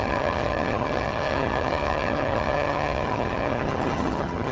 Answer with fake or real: fake